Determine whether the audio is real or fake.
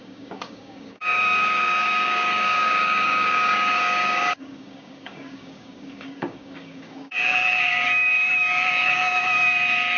fake